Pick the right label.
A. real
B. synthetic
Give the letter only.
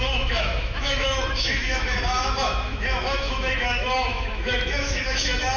B